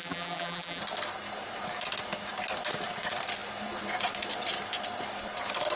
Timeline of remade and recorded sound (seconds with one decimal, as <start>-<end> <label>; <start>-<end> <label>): 0.0-0.8 remade; 0.8-5.8 recorded